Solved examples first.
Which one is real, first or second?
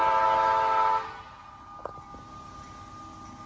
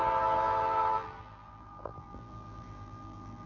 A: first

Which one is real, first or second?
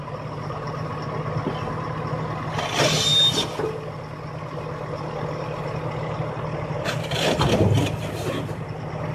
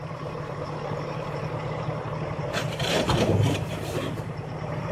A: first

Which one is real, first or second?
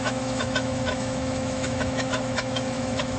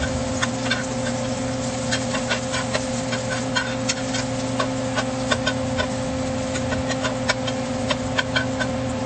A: second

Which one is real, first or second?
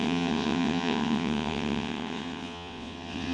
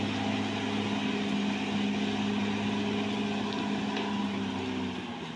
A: second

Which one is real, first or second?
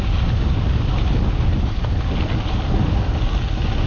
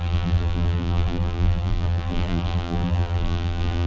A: first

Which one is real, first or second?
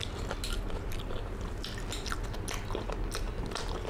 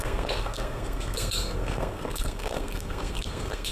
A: first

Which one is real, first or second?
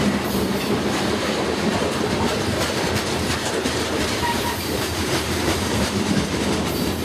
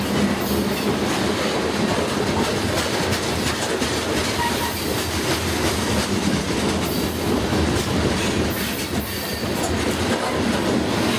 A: second